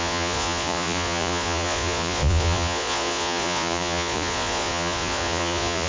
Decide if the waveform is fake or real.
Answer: fake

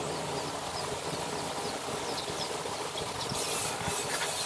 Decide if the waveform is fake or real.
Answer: real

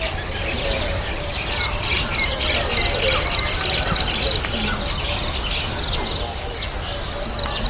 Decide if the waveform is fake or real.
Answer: real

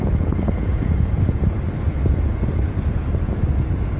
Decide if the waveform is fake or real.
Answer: fake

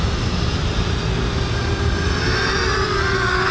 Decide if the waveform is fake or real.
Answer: real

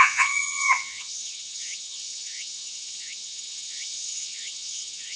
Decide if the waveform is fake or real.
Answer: fake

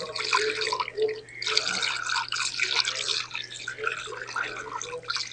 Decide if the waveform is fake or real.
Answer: real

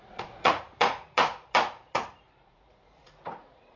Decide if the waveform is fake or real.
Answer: fake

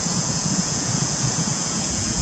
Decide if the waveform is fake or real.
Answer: fake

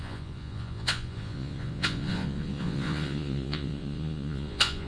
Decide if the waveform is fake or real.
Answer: fake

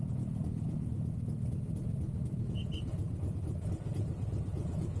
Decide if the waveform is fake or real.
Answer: fake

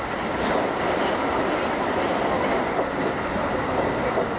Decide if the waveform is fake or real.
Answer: real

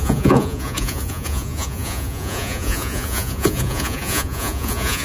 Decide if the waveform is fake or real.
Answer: fake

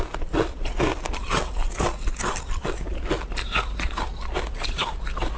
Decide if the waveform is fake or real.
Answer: real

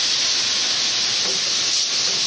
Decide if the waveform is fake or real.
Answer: real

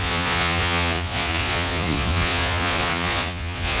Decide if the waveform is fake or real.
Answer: fake